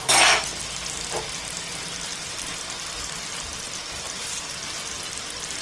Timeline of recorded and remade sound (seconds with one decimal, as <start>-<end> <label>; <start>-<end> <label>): 0.0-5.6 recorded